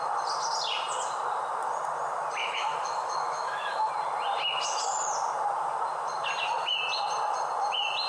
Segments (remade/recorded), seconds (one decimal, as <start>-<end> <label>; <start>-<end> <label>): 0.0-2.4 recorded; 2.4-3.9 remade; 3.9-8.1 recorded